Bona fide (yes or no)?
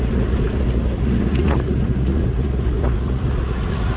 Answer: no